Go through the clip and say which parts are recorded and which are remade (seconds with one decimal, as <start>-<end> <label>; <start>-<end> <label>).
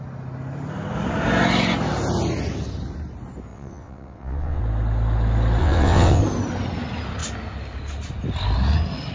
0.0-3.5 recorded; 3.5-4.6 remade; 4.6-5.6 recorded; 5.6-6.2 remade; 6.2-9.1 recorded